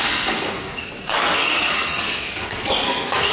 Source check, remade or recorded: remade